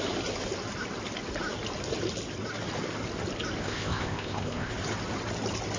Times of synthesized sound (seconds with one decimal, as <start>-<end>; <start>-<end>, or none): 3.6-4.7